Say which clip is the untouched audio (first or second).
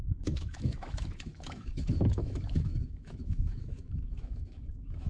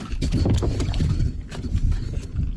second